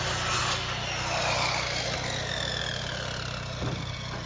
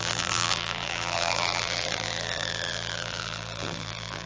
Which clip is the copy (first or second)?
second